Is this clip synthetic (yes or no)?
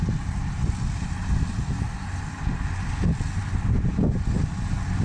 no